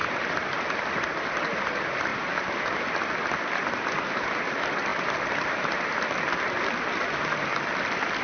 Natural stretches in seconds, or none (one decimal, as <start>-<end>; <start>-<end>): 1.4-2.1; 2.6-8.2